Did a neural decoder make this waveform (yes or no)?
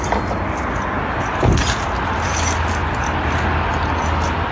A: no